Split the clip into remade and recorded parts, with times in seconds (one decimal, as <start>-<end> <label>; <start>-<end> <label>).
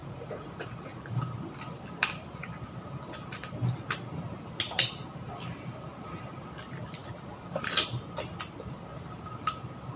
0.0-1.0 remade; 1.0-10.0 recorded